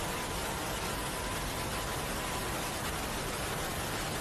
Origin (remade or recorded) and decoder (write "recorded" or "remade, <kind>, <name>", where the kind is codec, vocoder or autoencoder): recorded